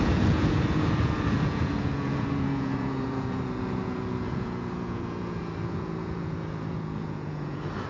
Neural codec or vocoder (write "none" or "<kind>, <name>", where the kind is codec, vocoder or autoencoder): vocoder, Vocos